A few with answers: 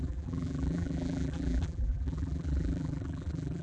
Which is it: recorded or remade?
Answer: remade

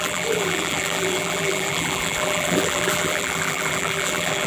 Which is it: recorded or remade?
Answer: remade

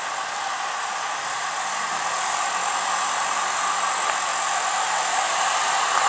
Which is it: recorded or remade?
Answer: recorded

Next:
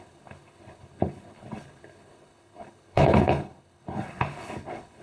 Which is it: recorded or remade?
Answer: remade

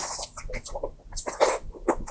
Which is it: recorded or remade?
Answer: recorded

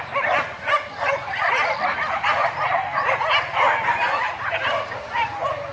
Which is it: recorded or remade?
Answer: recorded